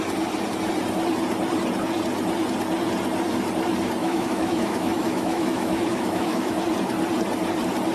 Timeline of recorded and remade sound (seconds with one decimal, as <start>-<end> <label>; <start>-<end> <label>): 0.0-4.0 recorded; 4.0-6.6 remade; 6.6-7.9 recorded